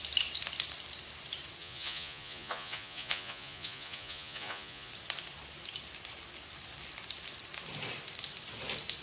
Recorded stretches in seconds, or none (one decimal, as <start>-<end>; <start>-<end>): 0.0-1.6; 4.9-9.0